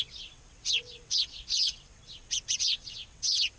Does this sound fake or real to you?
fake